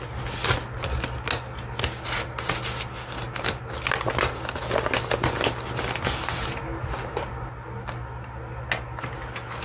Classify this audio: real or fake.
real